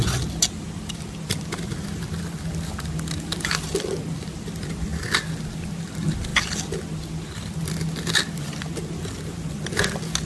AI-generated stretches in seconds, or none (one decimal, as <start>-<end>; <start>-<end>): none

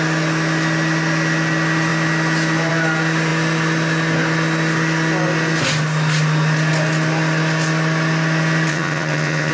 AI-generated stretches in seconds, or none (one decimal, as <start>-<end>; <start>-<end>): 8.7-9.5

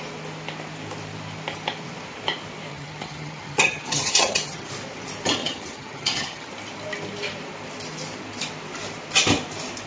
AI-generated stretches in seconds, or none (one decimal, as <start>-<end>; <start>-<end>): 2.7-4.7; 5.4-6.5

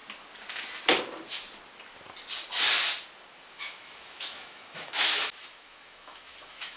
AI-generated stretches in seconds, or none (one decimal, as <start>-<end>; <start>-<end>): 3.5-6.8